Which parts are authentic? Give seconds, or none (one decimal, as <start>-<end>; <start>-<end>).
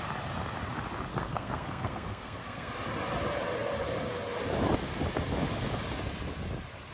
0.0-1.1; 2.7-6.9